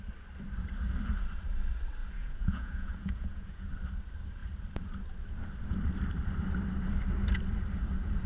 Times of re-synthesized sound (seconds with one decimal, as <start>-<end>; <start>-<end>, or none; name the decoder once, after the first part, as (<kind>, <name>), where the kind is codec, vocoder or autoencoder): 2.0-3.7 (vocoder, Vocos)